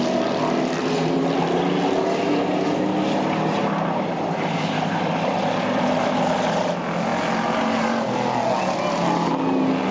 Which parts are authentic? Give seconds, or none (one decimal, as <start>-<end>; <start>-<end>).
0.0-9.9